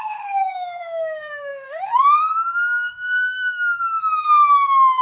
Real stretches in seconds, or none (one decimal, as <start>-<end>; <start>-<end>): none